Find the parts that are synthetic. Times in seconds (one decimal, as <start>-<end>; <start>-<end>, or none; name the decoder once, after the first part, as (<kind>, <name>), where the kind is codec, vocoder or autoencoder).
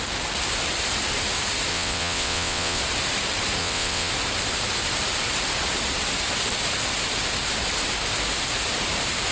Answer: 1.7-2.8 (vocoder, WaveNeXt); 3.6-4.1